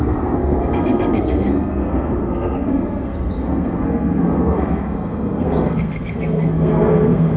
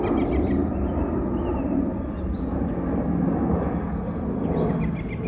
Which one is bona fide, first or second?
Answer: second